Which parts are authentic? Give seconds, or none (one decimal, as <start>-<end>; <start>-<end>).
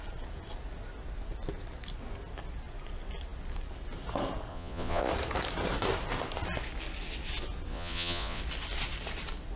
0.0-4.5; 5.1-7.7; 8.4-9.6